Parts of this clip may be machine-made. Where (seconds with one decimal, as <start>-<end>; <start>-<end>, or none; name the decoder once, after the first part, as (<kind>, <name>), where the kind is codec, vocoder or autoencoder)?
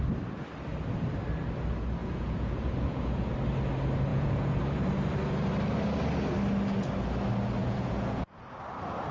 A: 2.0-3.3 (vocoder, Vocos); 4.1-4.6; 7.6-8.5